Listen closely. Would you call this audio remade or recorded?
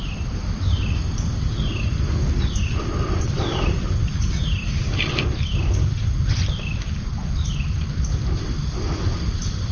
recorded